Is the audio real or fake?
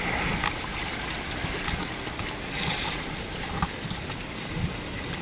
real